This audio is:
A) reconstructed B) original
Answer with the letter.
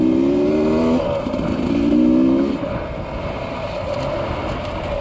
B